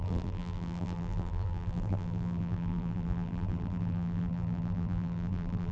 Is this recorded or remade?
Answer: remade